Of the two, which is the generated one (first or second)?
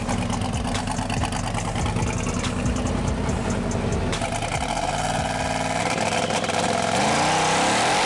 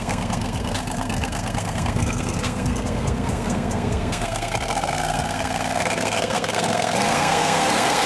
second